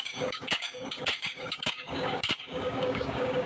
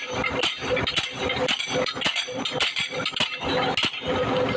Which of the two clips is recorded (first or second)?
second